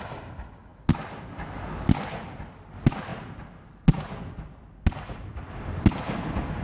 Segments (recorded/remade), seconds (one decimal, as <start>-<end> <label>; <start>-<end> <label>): 0.0-6.6 recorded